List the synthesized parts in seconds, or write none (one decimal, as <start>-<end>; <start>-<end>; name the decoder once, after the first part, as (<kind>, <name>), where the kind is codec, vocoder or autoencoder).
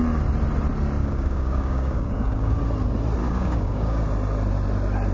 1.0-2.6 (codec, DAC); 3.2-4.0